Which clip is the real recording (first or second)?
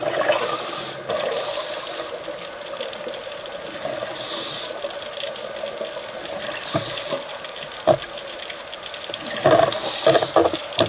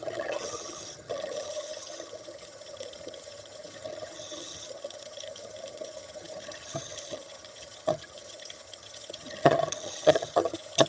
first